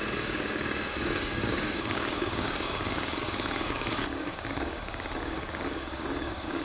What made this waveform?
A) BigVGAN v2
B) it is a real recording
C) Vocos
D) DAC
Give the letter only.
D